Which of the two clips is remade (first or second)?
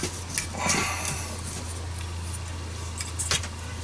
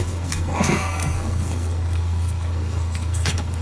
second